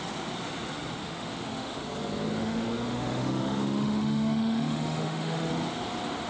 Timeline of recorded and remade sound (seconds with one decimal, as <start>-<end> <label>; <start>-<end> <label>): 0.0-1.0 recorded; 1.0-1.8 remade; 1.8-2.4 recorded; 2.4-5.5 remade; 5.5-6.3 recorded